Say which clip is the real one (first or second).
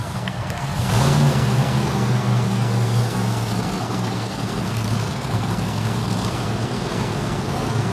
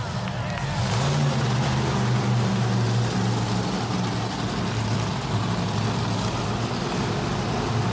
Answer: second